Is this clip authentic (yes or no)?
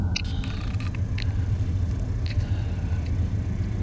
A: yes